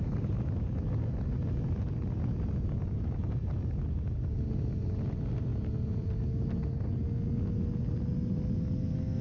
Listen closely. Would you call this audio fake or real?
real